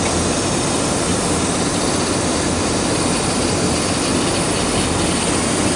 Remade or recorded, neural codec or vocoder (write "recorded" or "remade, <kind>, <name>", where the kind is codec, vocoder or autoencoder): recorded